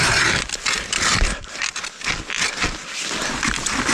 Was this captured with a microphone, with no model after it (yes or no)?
yes